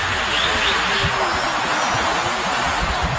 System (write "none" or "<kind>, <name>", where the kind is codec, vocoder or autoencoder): none